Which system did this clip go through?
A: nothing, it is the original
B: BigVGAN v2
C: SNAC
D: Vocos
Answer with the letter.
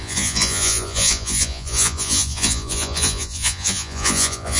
D